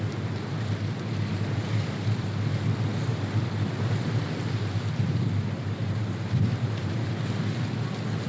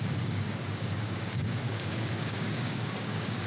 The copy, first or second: second